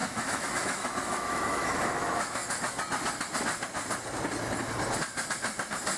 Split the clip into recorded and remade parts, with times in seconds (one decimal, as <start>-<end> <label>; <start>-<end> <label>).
0.0-2.4 remade; 2.4-6.0 recorded